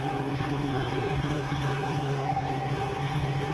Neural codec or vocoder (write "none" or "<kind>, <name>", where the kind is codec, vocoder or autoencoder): codec, SNAC